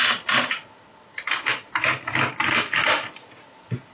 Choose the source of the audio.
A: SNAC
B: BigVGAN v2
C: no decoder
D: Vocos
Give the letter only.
C